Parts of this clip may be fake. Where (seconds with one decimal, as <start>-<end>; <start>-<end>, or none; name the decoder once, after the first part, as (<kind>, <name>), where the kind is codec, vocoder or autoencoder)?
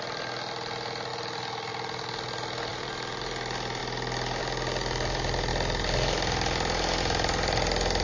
2.7-3.2 (vocoder, BigVGAN v2)